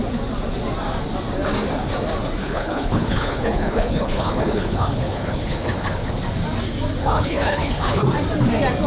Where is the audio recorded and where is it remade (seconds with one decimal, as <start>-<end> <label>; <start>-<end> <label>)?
0.0-2.4 recorded; 2.4-6.1 remade; 6.1-7.0 recorded; 7.0-8.0 remade; 8.0-8.9 recorded